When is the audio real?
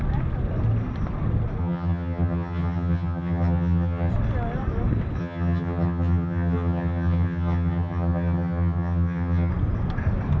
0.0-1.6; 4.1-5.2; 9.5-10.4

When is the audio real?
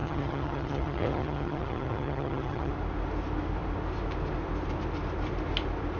2.7-6.0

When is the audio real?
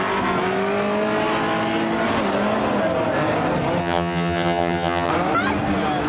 0.0-3.8; 5.1-6.1